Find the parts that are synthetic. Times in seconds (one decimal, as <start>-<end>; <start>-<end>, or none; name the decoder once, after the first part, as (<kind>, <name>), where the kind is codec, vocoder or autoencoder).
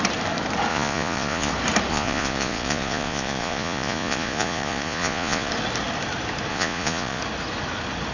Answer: 0.7-1.5 (vocoder, Vocos); 1.9-5.5; 6.5-7.2